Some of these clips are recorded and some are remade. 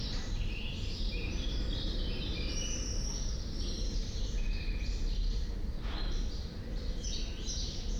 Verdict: remade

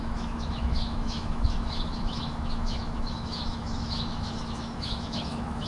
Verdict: remade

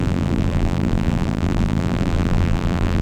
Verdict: remade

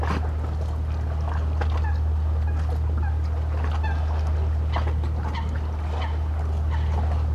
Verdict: recorded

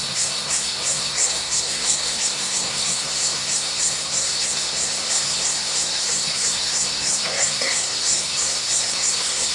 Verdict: remade